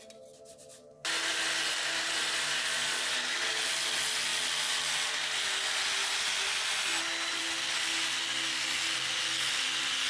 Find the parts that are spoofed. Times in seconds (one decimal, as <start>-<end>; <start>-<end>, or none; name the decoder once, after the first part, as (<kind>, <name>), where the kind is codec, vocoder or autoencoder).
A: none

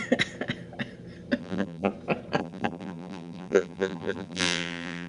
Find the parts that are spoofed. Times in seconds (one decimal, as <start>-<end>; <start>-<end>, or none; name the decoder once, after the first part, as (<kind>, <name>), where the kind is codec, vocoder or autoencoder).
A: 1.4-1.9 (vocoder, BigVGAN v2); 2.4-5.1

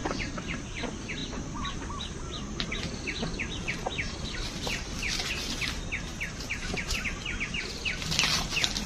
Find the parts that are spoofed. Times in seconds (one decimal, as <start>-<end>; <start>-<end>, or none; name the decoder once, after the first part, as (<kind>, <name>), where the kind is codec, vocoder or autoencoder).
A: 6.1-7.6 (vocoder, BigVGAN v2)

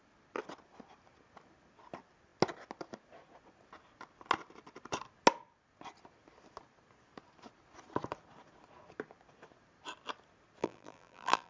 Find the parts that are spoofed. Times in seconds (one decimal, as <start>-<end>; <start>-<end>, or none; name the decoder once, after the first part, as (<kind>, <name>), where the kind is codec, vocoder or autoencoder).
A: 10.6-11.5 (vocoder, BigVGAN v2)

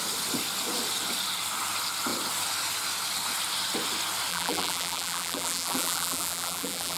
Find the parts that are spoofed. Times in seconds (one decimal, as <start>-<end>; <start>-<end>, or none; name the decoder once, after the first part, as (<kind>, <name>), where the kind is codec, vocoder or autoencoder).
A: 4.3-7.0 (vocoder, BigVGAN v2)